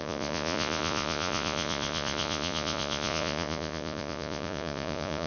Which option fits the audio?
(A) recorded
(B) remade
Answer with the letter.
B